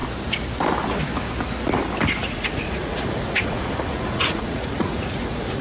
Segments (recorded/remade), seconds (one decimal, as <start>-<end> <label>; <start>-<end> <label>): 0.0-2.2 recorded; 2.2-5.6 remade